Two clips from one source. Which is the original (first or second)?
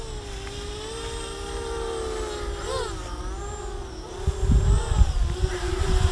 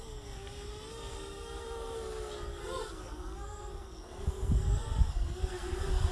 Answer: first